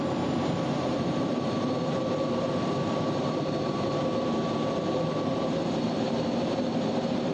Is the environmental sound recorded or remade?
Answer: remade